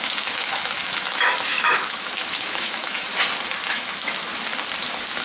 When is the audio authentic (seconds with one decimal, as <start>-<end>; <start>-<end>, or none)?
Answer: 3.1-3.7; 4.3-5.2